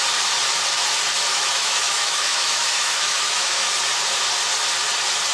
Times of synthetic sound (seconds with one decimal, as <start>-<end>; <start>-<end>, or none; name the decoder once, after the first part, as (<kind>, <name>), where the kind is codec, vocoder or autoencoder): 1.3-3.7 (autoencoder, DAC-VAE)